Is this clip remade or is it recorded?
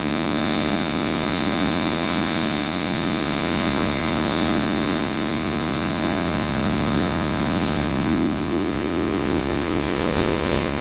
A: remade